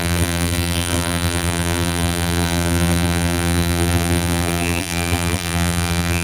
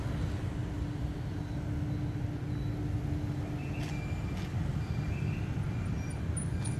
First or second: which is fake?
first